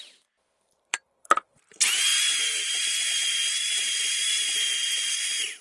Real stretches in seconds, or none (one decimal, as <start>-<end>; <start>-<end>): none